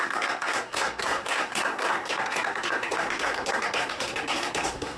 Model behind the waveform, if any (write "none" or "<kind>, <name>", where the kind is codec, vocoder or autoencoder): codec, SNAC